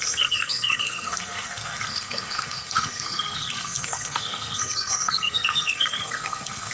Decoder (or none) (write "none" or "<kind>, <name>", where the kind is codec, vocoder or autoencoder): codec, SNAC